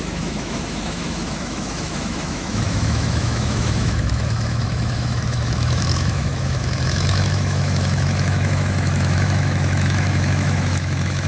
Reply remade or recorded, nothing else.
remade